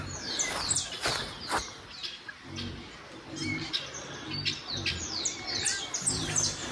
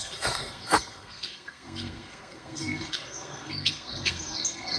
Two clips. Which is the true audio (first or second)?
first